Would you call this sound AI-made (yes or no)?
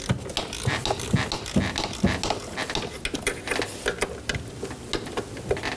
no